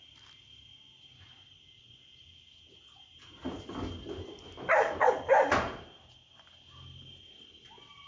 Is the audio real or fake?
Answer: real